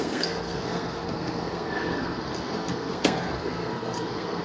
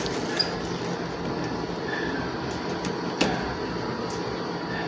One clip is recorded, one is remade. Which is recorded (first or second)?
second